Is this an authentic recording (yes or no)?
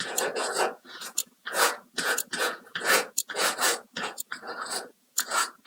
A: no